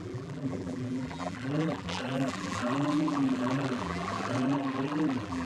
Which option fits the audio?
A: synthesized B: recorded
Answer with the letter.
A